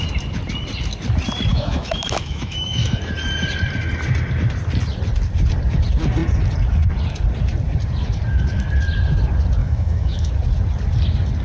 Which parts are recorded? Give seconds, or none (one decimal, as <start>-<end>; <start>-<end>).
0.0-1.5; 3.0-9.6; 10.3-11.4